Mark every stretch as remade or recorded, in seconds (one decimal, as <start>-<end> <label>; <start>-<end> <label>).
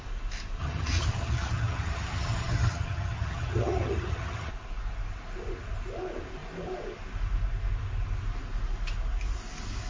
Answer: 0.0-0.6 recorded; 0.6-4.5 remade; 4.5-9.9 recorded